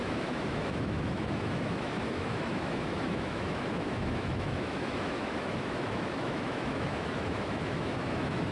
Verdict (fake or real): fake